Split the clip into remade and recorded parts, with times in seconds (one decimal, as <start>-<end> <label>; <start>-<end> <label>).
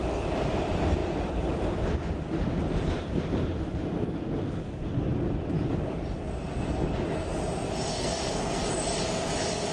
0.0-7.9 recorded; 7.9-8.6 remade; 8.6-9.7 recorded